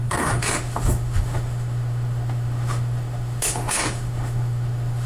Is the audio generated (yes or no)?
yes